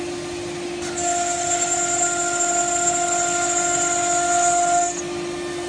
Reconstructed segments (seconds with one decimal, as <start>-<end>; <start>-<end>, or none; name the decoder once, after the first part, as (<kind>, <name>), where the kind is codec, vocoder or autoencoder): none